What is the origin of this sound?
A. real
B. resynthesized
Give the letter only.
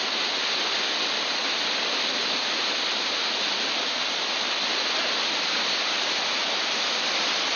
A